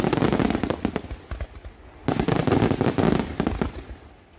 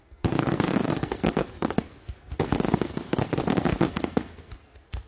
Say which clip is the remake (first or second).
second